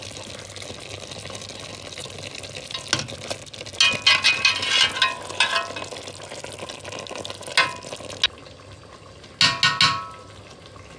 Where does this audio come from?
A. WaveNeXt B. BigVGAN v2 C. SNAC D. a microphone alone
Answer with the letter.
D